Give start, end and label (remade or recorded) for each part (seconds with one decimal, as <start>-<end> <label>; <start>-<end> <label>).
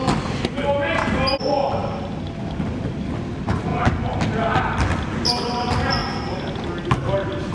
0.0-7.5 recorded